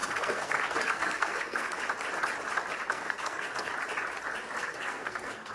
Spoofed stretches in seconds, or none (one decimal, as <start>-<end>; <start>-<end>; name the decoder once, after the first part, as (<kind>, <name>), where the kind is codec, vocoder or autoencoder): 0.0-1.8 (codec, SNAC); 2.9-3.7; 4.6-5.5